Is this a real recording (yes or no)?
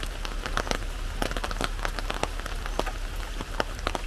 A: yes